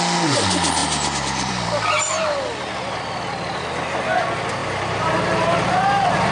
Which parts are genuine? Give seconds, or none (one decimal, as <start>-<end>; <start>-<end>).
0.0-0.8; 2.9-4.6